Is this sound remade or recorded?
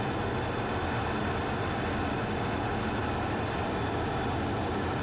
recorded